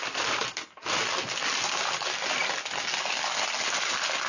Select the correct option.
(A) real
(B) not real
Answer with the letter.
A